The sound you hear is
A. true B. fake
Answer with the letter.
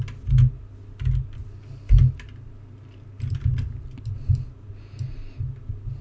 A